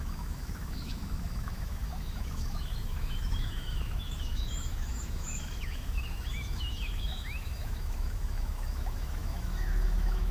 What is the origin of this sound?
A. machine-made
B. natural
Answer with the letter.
A